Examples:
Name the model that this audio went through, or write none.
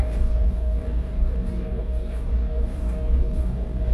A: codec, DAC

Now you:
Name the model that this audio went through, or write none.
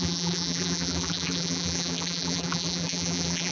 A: vocoder, BigVGAN v2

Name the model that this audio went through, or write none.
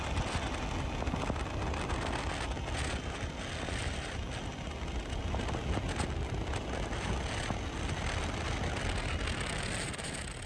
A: none